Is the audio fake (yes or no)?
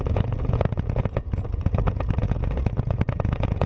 yes